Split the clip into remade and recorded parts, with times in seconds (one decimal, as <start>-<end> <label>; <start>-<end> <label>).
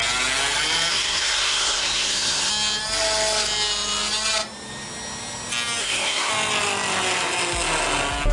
0.0-0.9 recorded; 0.9-2.5 remade; 2.5-5.8 recorded; 5.8-6.3 remade; 6.3-8.3 recorded